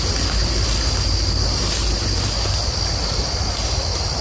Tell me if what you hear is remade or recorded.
recorded